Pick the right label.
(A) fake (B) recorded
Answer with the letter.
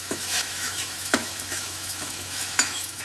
A